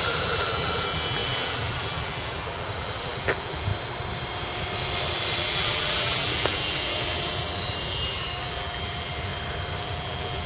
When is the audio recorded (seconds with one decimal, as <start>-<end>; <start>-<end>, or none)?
3.7-5.4; 9.3-9.8